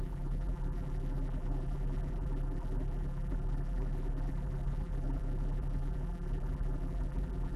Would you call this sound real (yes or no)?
no